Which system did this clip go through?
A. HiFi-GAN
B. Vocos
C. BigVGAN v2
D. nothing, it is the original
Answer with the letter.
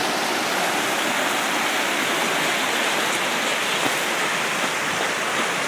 D